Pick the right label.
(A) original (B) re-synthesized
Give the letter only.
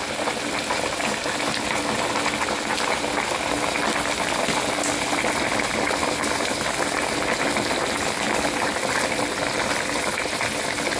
A